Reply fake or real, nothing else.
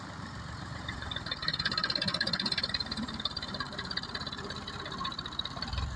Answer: fake